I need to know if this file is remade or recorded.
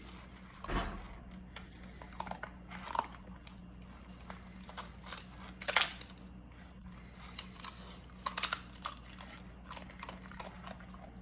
recorded